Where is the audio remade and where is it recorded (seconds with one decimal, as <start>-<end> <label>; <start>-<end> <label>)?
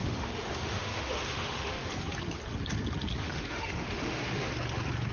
0.0-1.9 remade; 1.9-3.2 recorded; 3.2-4.5 remade; 4.5-5.1 recorded